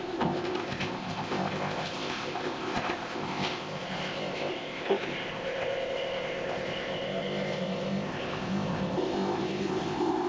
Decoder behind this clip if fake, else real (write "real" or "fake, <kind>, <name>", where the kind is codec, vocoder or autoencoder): fake, codec, ZipCodec